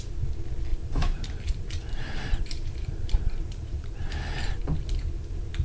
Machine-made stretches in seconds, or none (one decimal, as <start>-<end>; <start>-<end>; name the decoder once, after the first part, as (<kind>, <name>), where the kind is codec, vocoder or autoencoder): 0.7-4.1 (vocoder, BigVGAN v2)